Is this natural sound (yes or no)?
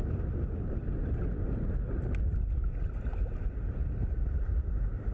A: yes